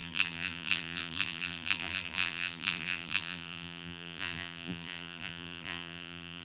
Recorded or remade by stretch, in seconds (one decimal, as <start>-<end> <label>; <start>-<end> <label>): 0.0-6.4 remade